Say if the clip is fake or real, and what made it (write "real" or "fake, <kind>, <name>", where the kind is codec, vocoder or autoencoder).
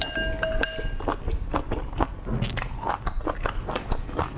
real